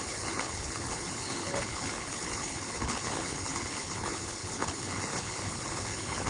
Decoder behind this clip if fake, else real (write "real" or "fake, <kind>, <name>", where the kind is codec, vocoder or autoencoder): fake, codec, HILCodec